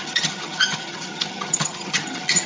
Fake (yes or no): yes